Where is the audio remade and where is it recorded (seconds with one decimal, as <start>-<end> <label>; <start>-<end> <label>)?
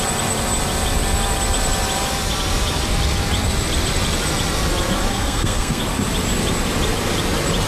0.0-5.1 recorded; 5.1-5.8 remade; 5.8-7.7 recorded